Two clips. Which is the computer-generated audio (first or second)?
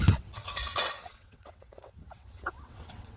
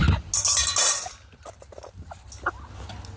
first